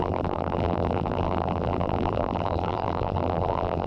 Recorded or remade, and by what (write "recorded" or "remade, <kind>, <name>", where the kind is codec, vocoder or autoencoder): remade, vocoder, BigVGAN v2